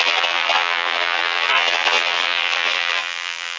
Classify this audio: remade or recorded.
remade